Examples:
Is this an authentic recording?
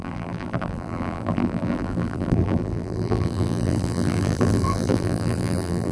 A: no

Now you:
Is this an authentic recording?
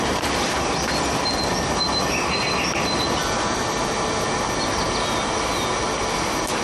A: yes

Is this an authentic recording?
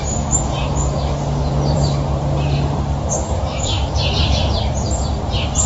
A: no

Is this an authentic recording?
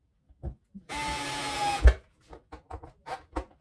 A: yes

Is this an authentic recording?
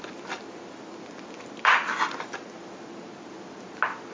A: yes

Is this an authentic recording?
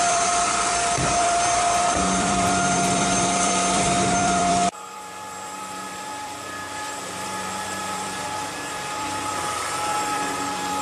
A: no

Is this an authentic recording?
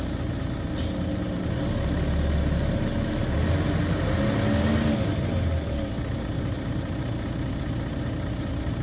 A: yes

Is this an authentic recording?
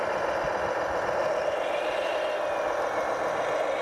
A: yes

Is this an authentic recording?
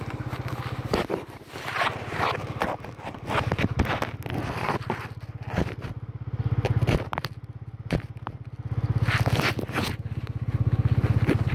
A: yes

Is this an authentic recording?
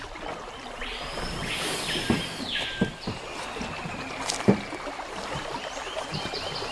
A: yes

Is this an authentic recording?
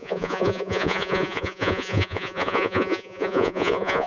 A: no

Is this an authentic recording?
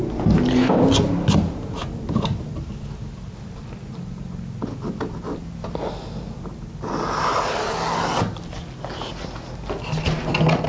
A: yes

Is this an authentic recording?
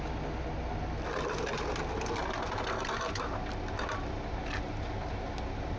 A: yes